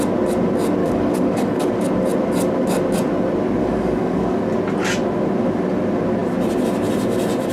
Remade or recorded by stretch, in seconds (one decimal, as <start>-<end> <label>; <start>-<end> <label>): 0.0-0.8 recorded; 0.8-1.9 remade; 1.9-3.6 recorded; 3.6-4.4 remade; 4.4-7.5 recorded